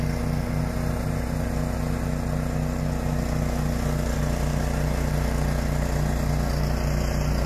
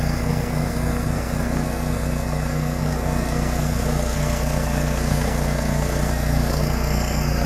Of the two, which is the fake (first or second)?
second